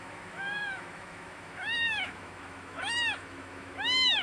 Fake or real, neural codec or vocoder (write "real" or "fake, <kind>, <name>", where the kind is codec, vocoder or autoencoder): fake, autoencoder, DAC-VAE